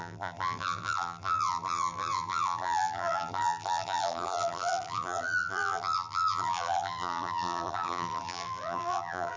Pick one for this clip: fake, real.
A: fake